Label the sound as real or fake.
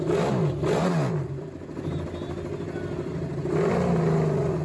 real